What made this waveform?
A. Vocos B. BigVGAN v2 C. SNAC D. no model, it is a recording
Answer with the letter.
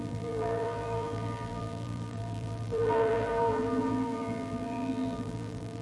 B